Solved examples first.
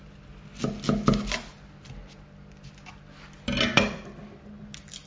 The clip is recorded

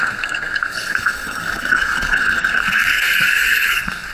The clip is remade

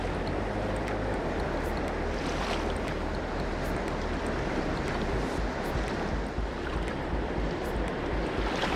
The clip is recorded